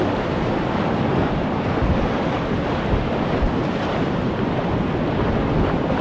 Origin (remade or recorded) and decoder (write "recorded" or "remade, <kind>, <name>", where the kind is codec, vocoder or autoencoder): recorded